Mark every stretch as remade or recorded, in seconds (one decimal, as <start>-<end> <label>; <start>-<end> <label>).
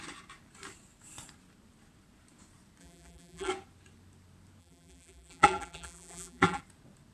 0.0-2.8 recorded; 2.8-3.5 remade; 3.5-4.6 recorded; 4.6-6.6 remade; 6.6-7.1 recorded